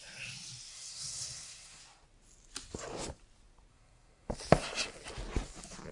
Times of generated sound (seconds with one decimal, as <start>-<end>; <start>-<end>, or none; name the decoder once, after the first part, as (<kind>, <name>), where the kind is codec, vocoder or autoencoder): 0.7-1.8 (codec, SNAC); 3.7-4.3